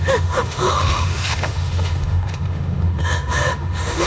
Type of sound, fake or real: fake